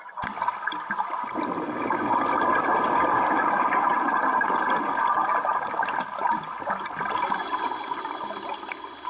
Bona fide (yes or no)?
yes